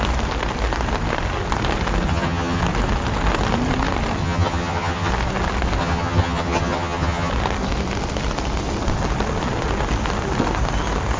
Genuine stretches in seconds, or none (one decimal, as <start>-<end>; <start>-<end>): 0.0-2.1; 2.6-4.2; 5.1-5.8; 7.3-11.2

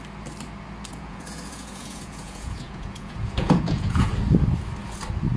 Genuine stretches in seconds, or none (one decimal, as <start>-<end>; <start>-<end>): 0.0-0.9; 4.1-5.4

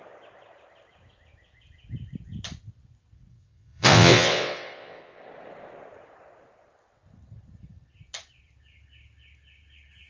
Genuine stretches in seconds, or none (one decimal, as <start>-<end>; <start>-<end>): 0.0-3.3; 5.2-10.1

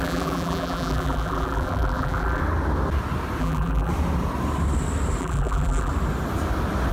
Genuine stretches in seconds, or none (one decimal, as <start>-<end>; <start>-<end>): 2.4-3.4; 3.9-5.2; 5.9-6.9